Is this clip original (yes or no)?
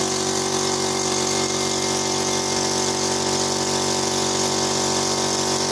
no